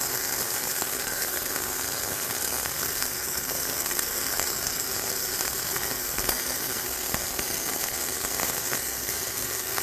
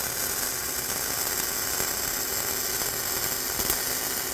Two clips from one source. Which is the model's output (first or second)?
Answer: first